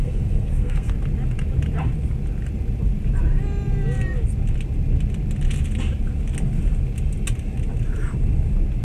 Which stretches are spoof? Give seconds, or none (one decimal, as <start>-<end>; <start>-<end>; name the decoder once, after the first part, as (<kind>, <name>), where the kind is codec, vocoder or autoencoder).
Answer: 0.0-0.9 (codec, SNAC)